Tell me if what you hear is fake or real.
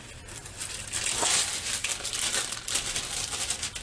real